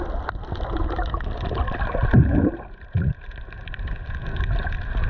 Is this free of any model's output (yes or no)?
yes